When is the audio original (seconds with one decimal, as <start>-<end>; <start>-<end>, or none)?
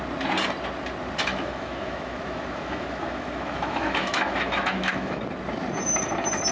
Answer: 0.0-1.3; 5.2-6.5